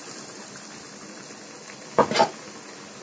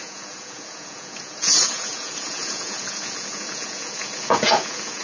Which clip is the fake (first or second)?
second